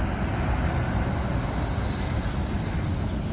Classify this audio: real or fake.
real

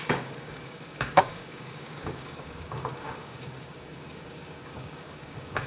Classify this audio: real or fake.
fake